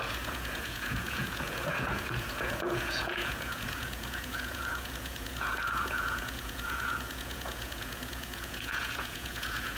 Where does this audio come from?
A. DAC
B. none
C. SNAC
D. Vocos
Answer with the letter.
D